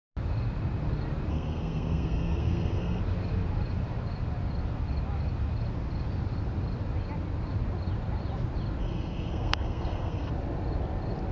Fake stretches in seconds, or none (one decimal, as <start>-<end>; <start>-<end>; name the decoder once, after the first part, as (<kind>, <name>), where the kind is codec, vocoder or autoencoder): 1.3-3.0 (codec, SNAC); 8.8-10.3